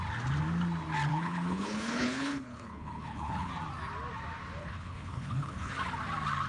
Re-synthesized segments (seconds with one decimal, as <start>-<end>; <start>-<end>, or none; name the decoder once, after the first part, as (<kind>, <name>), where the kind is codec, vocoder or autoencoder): 1.1-3.5 (codec, HILCodec); 4.6-5.7